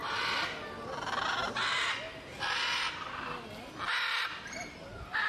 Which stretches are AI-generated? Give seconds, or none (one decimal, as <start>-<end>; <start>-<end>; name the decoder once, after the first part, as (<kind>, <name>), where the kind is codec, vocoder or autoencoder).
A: none